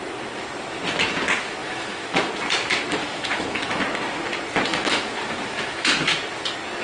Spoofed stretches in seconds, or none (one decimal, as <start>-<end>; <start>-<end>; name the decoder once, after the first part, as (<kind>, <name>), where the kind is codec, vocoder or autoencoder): 1.6-2.3 (autoencoder, DAC-VAE); 3.0-3.8; 4.7-5.9